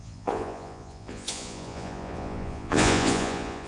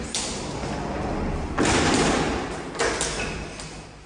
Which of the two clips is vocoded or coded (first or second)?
first